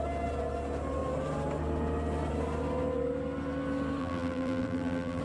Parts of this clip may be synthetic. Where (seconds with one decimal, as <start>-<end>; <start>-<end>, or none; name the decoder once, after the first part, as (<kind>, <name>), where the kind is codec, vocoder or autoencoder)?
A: 4.0-5.2 (vocoder, BigVGAN v2)